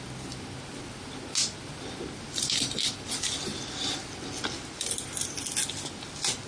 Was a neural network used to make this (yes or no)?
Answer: no